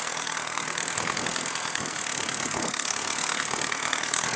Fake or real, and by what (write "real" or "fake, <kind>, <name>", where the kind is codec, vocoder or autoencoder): fake, codec, SNAC